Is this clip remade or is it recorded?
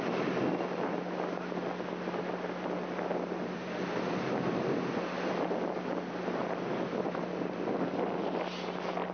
recorded